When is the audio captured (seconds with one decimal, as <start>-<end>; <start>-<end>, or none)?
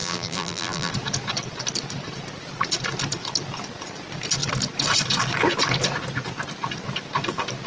0.9-7.7